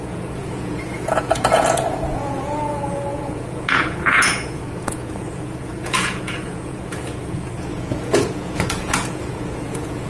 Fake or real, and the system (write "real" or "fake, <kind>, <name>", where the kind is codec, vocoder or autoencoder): fake, vocoder, Vocos